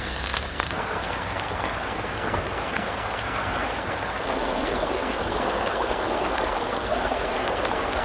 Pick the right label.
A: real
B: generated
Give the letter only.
B